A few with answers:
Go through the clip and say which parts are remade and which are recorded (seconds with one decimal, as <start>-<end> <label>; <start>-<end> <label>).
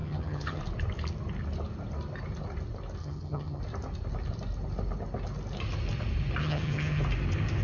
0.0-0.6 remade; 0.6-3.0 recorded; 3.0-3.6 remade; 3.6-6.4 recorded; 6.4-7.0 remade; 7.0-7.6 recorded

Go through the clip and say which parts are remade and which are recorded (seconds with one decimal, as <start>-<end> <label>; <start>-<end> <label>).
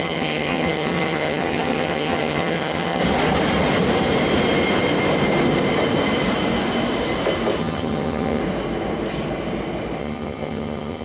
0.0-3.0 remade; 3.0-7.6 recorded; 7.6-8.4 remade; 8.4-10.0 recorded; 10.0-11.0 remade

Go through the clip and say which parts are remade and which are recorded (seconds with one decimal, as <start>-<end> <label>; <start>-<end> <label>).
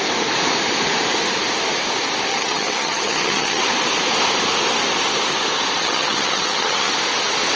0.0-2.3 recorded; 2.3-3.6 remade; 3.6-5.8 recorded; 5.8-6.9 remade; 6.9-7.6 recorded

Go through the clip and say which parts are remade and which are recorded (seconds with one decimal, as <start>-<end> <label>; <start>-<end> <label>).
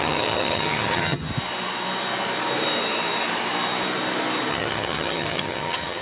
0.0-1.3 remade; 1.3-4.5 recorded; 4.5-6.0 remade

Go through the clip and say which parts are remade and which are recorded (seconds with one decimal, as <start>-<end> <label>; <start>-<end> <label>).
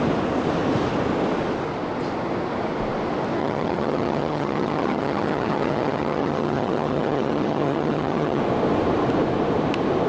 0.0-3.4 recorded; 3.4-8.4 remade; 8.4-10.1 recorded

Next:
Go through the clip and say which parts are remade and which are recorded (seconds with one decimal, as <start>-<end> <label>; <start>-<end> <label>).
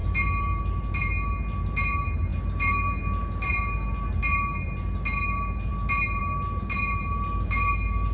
0.0-8.1 recorded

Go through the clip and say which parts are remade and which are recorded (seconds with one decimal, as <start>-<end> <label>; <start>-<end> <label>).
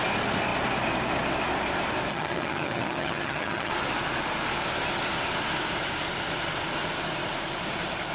0.0-2.1 recorded; 2.1-3.7 remade; 3.7-8.1 recorded